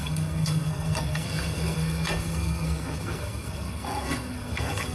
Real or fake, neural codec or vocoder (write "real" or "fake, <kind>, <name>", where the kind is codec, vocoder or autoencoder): fake, codec, SNAC